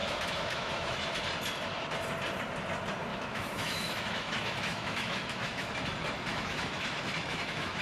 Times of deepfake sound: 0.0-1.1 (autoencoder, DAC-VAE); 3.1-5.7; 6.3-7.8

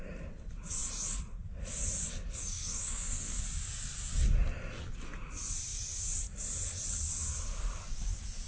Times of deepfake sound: 2.4-3.4 (codec, SNAC)

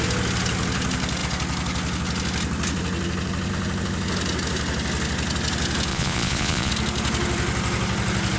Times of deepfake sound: 5.9-6.7 (vocoder, Vocos)

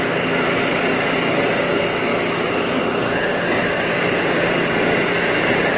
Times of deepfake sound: 0.7-3.6 (codec, DAC)

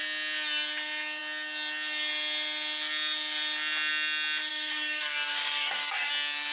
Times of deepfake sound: 4.5-6.1 (codec, DAC)